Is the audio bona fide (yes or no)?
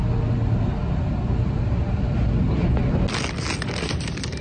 yes